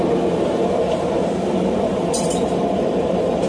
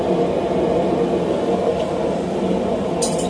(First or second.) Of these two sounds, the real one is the second